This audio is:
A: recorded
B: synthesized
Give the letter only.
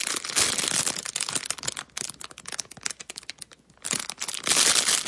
A